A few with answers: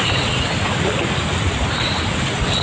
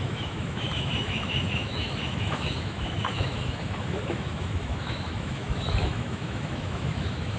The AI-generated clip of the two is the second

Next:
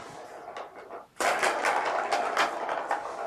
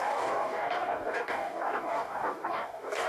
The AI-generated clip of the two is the second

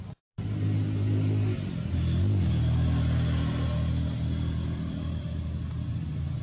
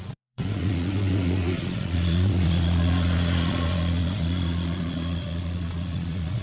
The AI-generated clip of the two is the second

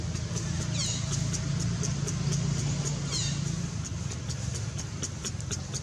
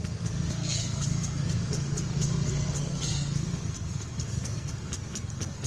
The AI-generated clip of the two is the second